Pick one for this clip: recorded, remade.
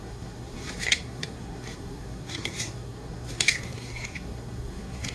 remade